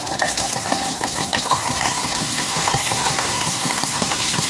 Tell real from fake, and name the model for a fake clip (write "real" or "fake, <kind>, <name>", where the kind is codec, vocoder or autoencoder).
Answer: fake, codec, SNAC